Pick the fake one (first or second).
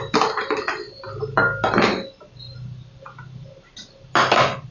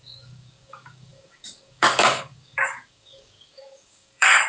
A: second